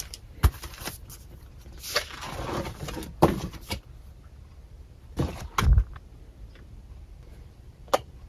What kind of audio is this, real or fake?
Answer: fake